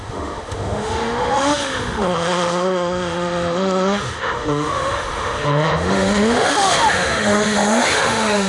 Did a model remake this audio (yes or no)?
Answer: yes